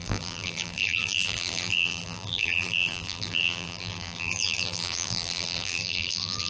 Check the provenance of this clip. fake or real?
fake